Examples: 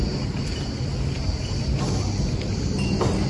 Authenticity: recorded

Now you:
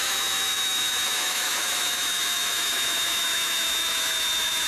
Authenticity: remade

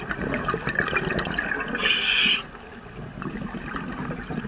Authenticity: recorded